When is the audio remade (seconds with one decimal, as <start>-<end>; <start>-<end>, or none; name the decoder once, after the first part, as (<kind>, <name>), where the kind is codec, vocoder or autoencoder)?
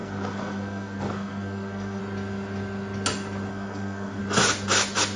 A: 0.0-2.0 (codec, SNAC); 3.5-4.2